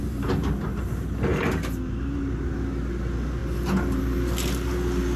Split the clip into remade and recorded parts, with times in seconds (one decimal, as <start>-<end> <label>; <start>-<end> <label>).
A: 0.0-5.2 recorded